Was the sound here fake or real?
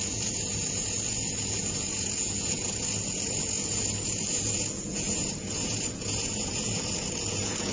fake